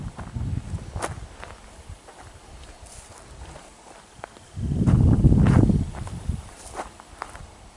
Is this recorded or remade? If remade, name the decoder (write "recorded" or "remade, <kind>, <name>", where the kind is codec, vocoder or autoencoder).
recorded